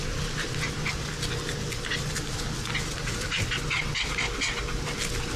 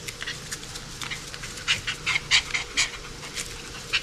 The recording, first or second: first